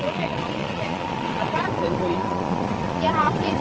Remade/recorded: remade